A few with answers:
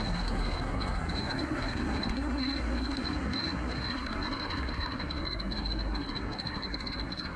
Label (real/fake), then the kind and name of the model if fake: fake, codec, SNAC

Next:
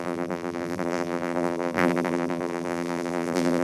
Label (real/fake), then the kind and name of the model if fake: fake, vocoder, BigVGAN v2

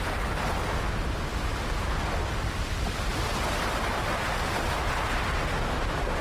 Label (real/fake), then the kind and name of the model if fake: real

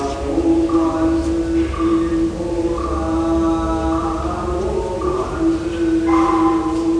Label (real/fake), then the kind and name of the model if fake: real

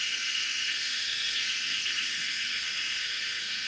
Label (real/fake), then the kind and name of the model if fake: fake, codec, SNAC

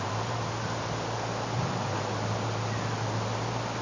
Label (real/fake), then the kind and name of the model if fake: real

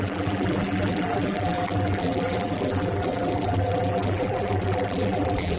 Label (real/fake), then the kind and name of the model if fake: fake, vocoder, BigVGAN v2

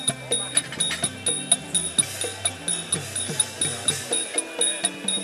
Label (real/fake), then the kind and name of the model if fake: real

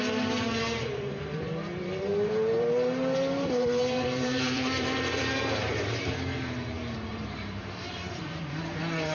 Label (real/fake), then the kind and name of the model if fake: fake, vocoder, BigVGAN v2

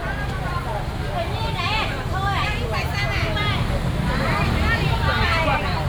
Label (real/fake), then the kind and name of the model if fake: real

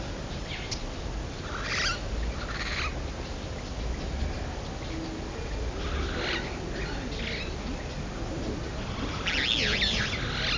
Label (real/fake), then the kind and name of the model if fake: real